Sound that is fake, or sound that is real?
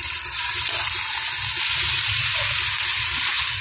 real